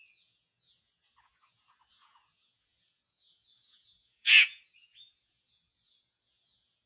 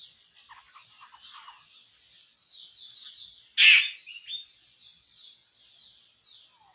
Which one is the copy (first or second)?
first